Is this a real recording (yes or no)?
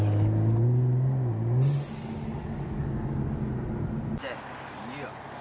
yes